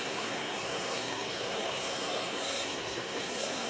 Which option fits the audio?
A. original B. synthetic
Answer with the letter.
B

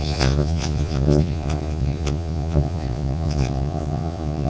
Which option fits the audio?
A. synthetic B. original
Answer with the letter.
A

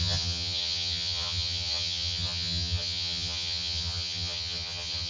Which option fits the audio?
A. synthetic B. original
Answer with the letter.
A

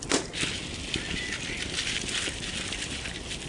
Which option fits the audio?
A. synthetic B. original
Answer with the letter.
B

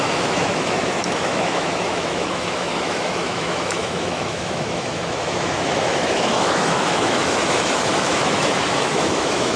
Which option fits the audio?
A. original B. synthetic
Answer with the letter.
B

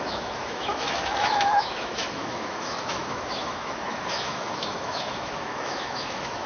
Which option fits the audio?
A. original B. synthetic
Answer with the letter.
B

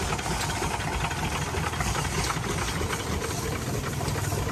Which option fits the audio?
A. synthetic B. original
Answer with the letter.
B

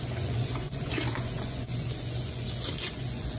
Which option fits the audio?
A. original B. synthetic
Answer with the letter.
B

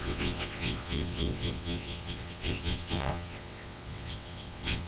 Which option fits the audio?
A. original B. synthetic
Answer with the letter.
B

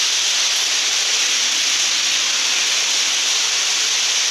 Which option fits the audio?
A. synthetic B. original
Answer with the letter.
B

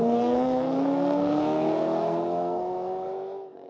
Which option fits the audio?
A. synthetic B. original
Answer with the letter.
A